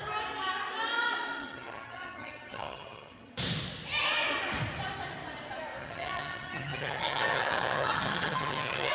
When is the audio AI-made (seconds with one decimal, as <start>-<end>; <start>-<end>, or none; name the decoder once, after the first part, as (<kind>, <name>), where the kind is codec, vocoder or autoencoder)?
1.4-3.3 (vocoder, HiFi-GAN); 5.8-8.9